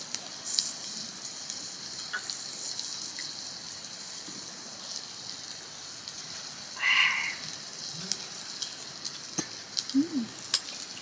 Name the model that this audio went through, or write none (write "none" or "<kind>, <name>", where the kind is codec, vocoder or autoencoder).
none